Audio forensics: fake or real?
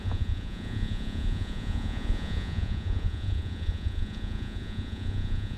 fake